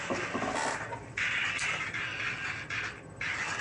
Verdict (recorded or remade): recorded